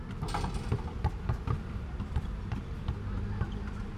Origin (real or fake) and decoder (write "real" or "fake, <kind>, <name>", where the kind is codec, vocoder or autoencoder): real